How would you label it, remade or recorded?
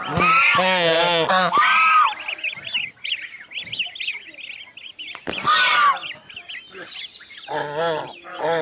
recorded